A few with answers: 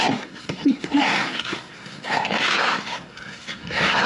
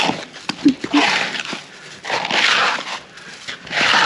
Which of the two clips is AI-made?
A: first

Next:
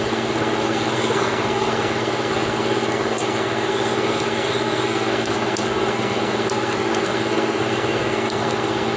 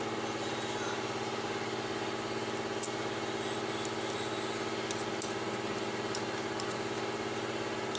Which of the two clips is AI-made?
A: first